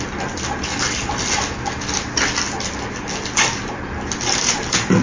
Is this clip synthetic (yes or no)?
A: no